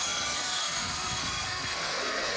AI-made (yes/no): yes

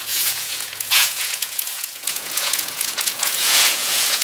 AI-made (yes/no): yes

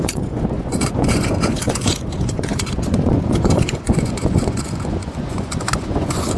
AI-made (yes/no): yes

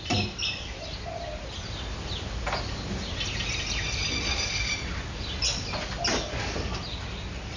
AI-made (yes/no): no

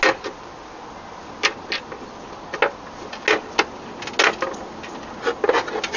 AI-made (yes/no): no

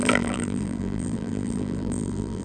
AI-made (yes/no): yes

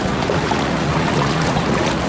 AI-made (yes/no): yes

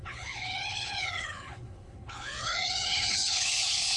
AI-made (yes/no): yes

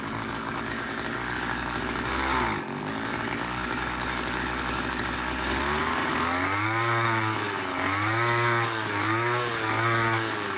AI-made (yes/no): yes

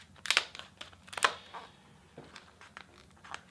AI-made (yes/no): no